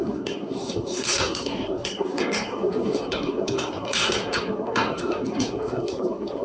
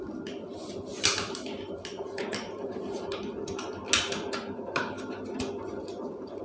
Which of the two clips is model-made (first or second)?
first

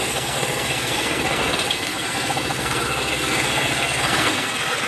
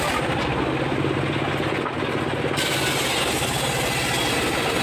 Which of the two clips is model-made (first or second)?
first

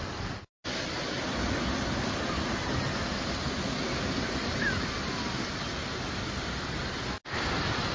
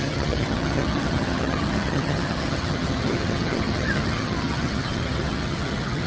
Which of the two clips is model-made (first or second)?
second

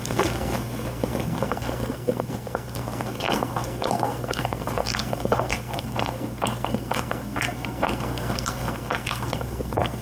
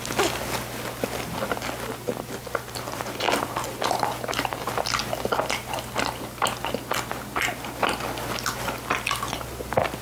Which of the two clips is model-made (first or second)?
first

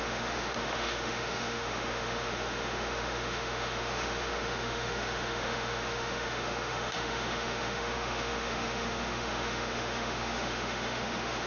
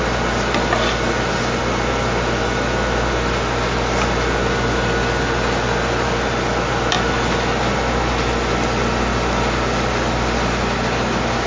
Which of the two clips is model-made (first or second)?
first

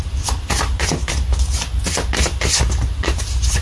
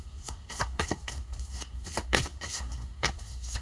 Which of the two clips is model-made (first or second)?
second